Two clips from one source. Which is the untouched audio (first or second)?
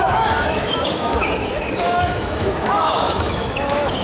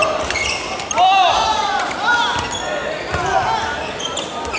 second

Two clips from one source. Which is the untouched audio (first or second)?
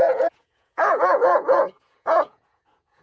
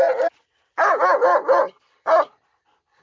second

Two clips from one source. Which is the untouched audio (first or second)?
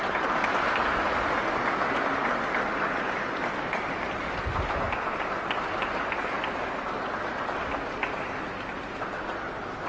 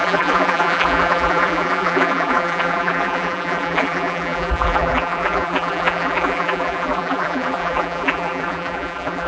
first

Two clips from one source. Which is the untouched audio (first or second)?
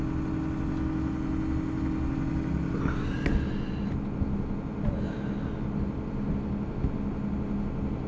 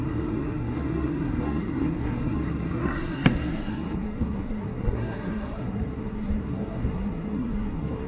first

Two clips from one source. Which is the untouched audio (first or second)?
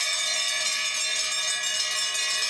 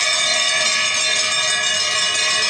first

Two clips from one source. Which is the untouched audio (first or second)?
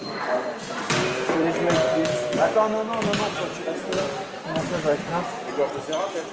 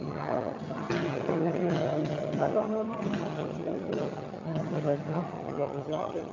first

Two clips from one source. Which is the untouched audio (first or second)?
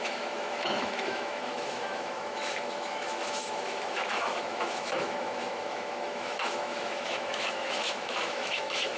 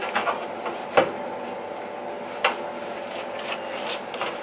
second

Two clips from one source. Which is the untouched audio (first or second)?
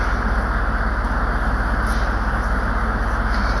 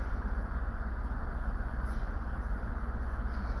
first